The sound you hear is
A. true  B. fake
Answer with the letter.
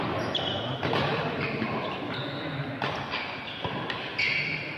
A